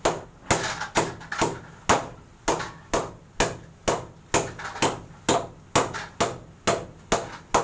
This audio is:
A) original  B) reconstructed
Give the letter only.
A